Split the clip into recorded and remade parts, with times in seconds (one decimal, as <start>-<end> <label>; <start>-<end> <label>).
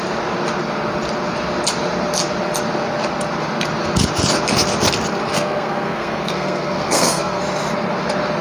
0.0-5.3 recorded; 5.3-7.4 remade; 7.4-8.4 recorded